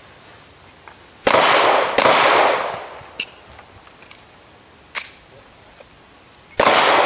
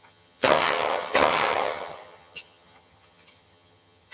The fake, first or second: second